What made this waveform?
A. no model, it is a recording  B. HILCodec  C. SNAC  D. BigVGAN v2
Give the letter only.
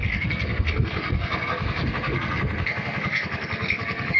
C